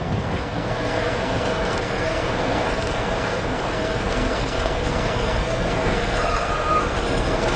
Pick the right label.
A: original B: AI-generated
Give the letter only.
B